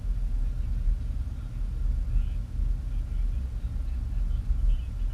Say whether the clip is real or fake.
real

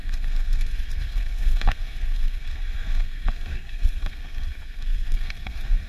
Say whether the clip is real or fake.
fake